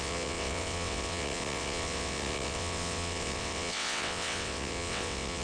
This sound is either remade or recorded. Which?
remade